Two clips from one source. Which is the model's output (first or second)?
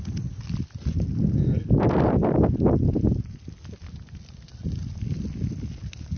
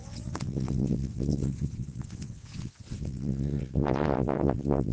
second